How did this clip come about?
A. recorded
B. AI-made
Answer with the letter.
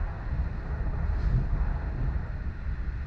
A